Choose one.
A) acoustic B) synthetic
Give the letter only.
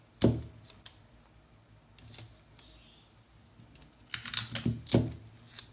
A